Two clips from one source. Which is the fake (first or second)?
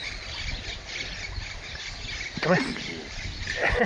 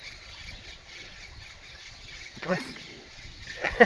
second